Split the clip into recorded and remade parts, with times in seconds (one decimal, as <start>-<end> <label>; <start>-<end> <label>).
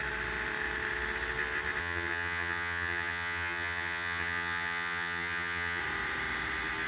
0.0-1.8 recorded; 1.8-5.8 remade; 5.8-6.9 recorded